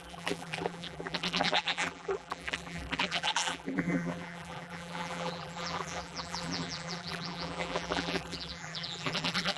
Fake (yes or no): yes